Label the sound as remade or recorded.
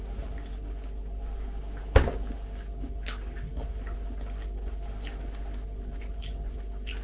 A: recorded